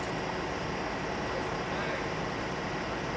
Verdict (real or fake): real